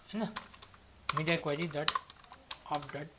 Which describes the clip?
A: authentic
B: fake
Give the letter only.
A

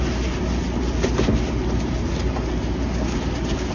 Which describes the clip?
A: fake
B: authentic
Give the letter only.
B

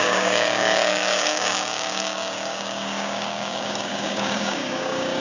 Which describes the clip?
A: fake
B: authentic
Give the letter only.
A